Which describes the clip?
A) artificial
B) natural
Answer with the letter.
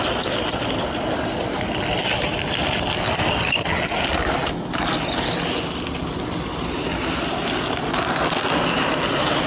B